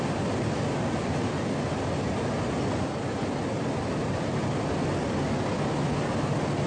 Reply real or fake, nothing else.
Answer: real